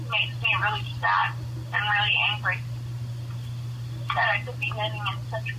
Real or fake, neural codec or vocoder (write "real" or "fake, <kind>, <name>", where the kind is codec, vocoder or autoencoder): real